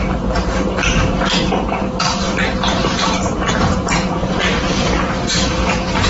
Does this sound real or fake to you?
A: fake